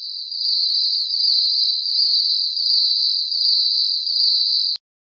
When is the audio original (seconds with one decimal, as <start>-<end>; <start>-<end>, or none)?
0.0-0.6; 2.3-5.0